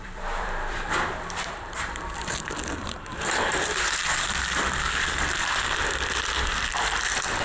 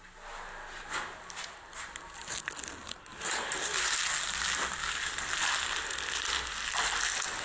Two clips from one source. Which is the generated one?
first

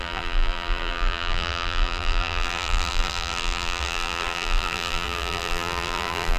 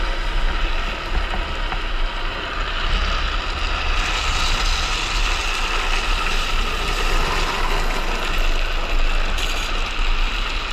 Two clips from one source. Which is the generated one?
first